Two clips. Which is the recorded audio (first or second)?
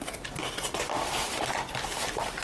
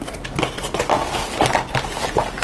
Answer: second